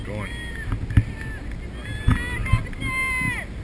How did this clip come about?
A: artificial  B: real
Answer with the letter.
B